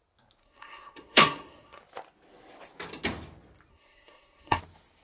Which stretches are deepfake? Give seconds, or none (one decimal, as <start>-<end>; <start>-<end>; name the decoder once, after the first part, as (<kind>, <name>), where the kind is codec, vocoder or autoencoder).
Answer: 0.4-1.8 (codec, SNAC); 3.7-4.6